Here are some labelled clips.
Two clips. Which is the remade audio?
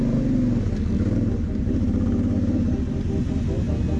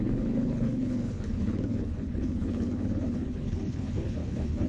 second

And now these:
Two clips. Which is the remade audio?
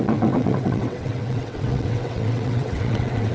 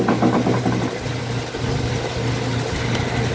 first